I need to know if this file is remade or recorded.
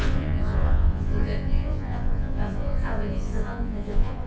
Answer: remade